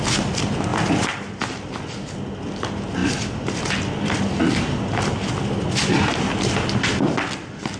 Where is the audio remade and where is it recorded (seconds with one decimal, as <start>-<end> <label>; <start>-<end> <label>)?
0.0-0.7 recorded; 0.7-1.7 remade; 1.7-3.0 recorded; 3.0-5.3 remade; 5.3-7.8 recorded